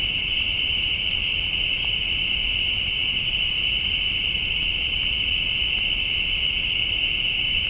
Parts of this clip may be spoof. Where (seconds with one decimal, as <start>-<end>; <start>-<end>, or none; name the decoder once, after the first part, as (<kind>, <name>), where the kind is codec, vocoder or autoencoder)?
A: 0.0-1.2 (vocoder, BigVGAN v2); 2.6-4.7; 7.3-7.7